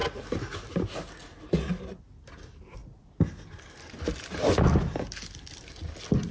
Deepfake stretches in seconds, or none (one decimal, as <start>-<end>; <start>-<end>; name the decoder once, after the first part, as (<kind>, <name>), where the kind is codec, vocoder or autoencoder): 2.8-4.5 (vocoder, BigVGAN v2)